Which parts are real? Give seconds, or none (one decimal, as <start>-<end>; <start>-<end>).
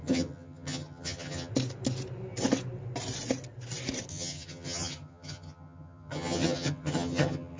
1.5-4.1